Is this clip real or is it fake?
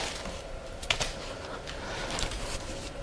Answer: real